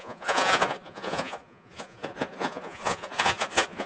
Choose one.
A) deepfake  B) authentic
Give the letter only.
A